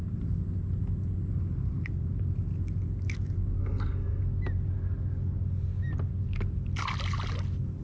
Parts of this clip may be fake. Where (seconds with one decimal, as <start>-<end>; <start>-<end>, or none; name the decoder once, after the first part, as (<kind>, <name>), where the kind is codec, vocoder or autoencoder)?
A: 3.6-4.2 (codec, SNAC)